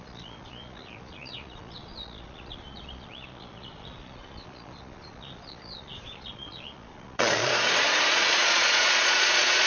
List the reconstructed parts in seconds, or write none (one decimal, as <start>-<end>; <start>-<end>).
0.0-7.5; 8.1-9.7